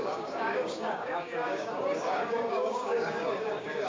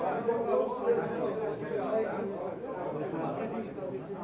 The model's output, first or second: first